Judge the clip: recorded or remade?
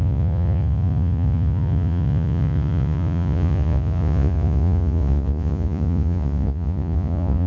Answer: remade